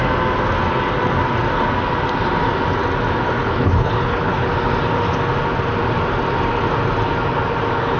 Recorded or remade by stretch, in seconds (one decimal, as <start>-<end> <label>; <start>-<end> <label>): 0.0-3.4 recorded; 3.4-4.5 remade; 4.5-8.0 recorded

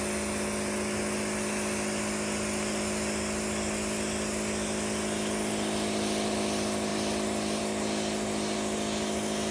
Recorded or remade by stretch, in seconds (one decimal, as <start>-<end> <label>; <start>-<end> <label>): 0.0-9.5 recorded

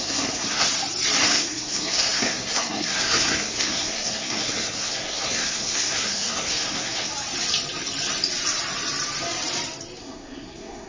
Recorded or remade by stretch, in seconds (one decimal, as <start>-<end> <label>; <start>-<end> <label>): 0.0-0.7 remade; 0.7-1.2 recorded; 1.2-7.1 remade; 7.1-10.0 recorded; 10.0-10.9 remade

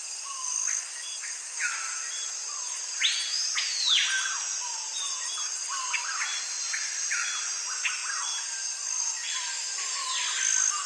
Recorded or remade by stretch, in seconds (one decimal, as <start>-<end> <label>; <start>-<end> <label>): 0.0-10.9 recorded

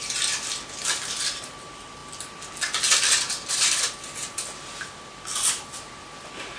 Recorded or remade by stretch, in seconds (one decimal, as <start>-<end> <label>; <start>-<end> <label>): 0.0-6.6 recorded

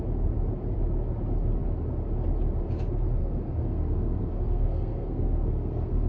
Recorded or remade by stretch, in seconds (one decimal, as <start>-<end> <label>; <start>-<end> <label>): 0.0-3.2 recorded; 3.2-6.1 remade

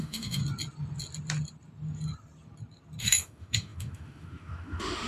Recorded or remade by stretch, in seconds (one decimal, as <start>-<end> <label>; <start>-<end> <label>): 0.0-0.4 remade; 0.4-3.0 recorded; 3.0-5.1 remade